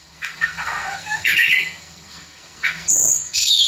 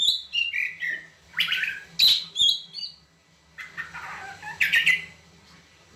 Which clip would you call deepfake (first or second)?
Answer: first